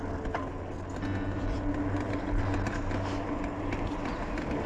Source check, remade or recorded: recorded